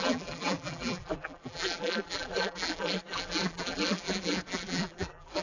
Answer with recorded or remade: remade